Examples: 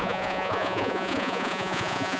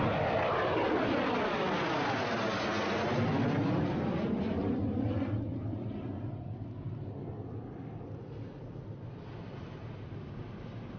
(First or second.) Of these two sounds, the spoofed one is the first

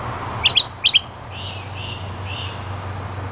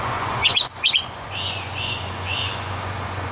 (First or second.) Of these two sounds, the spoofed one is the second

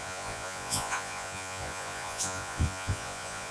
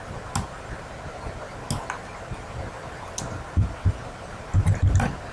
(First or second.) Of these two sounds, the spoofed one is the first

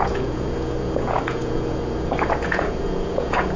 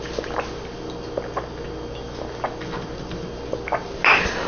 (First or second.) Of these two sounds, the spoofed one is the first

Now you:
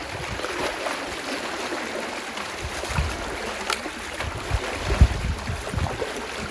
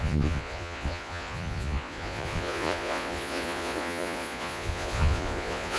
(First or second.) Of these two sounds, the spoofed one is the second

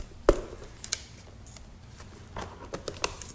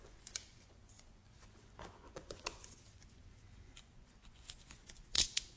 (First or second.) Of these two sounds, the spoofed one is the second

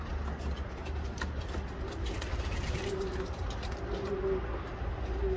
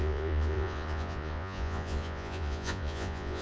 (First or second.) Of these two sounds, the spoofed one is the second